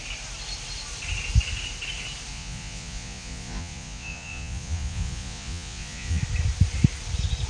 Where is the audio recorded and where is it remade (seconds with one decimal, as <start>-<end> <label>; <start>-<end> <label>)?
0.0-2.3 recorded; 2.3-6.2 remade; 6.2-7.5 recorded